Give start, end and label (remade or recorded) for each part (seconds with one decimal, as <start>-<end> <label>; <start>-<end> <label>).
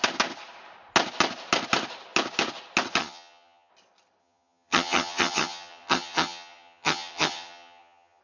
0.0-3.0 recorded; 3.0-3.7 remade; 3.7-4.2 recorded; 4.2-8.2 remade